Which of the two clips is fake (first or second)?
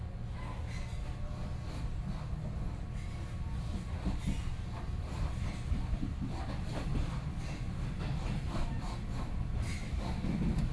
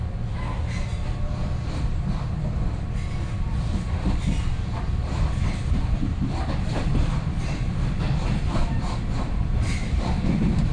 second